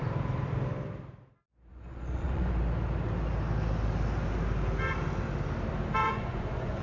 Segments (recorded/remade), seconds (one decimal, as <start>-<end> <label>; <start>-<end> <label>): 0.0-1.7 recorded; 1.7-2.5 remade; 2.5-6.0 recorded; 6.0-6.8 remade